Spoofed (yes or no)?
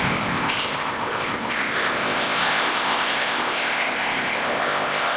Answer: yes